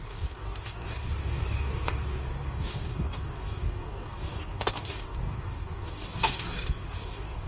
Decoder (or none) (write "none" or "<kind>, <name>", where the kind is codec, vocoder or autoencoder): codec, DAC